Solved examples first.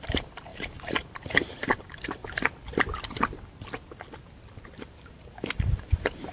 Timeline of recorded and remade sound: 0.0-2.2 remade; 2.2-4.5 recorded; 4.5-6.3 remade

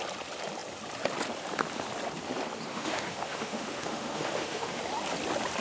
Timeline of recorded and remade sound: 0.0-2.7 recorded; 2.7-4.8 remade; 4.8-5.6 recorded

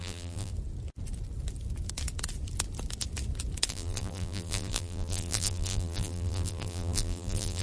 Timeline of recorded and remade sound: 0.0-0.5 remade; 0.5-3.7 recorded; 3.7-7.6 remade

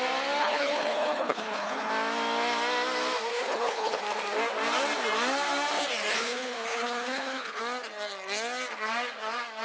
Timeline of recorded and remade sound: 0.0-0.4 recorded; 0.4-1.9 remade; 1.9-3.3 recorded; 3.3-4.0 remade; 4.0-6.1 recorded; 6.1-7.6 remade; 7.6-9.6 recorded

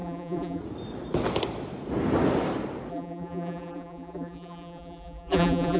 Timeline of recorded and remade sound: 0.0-0.6 remade; 0.6-2.9 recorded; 2.9-5.8 remade

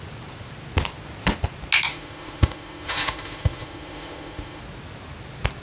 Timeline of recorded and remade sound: 0.0-1.9 recorded; 1.9-4.6 remade; 4.6-5.6 recorded

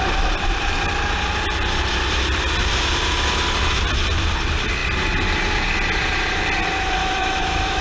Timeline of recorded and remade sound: 0.0-7.0 recorded; 7.0-7.8 remade

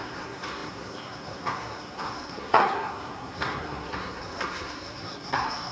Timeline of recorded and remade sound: 0.0-5.7 remade